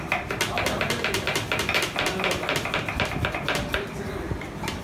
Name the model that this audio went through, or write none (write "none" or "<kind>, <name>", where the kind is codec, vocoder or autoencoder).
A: none